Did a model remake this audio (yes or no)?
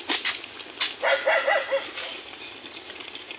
no